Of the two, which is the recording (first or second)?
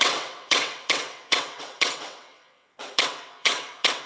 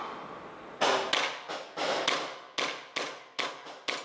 second